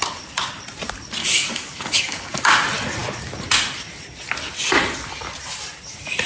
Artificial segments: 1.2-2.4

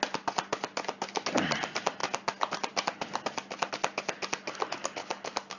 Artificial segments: 5.0-5.6

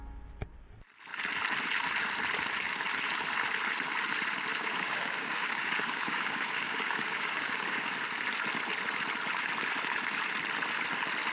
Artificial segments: 4.5-8.0

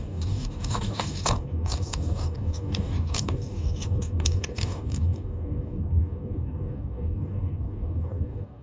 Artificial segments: 0.0-8.6

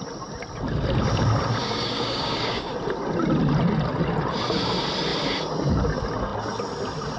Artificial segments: 1.6-2.7

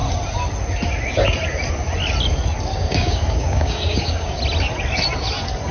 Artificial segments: 2.7-4.4

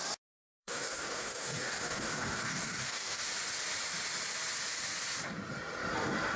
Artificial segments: 0.6-3.3